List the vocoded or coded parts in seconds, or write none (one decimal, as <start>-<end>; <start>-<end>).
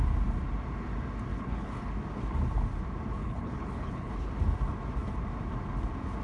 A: 1.3-1.9; 3.2-4.3